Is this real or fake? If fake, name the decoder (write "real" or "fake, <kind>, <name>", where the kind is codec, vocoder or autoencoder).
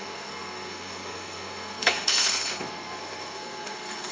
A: fake, codec, SNAC